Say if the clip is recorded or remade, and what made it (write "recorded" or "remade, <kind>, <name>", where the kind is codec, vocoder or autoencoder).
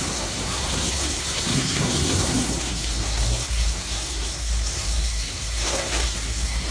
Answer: remade, codec, SNAC